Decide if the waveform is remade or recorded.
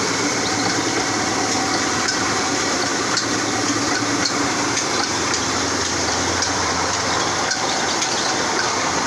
remade